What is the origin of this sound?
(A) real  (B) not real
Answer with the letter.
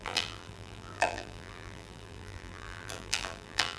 B